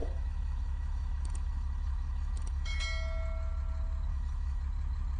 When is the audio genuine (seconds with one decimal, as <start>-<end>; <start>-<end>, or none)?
2.8-4.1; 4.6-5.2